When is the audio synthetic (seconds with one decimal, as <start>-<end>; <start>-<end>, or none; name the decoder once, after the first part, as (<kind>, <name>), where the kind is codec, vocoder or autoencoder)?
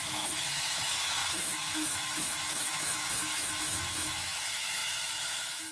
0.0-5.7 (autoencoder, DAC-VAE)